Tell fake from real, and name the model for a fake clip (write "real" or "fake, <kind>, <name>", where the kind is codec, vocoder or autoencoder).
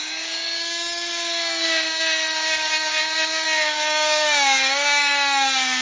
fake, codec, DAC